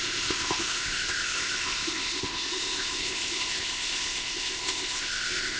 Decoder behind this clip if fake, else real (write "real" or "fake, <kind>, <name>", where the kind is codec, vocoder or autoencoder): fake, codec, ZipCodec